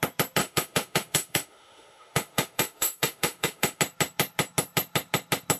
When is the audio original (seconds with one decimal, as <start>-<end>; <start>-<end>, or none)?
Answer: 0.0-0.4; 3.8-5.6